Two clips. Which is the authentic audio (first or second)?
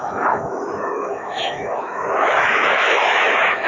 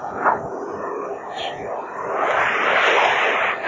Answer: second